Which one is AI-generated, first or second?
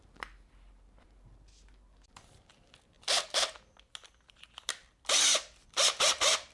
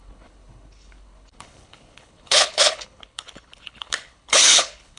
second